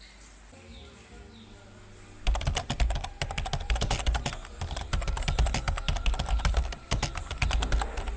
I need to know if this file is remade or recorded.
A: recorded